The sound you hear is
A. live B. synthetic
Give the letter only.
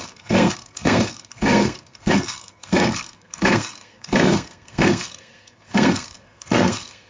B